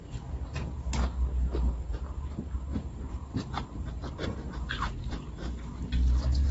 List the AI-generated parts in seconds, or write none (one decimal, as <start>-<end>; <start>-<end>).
1.9-5.8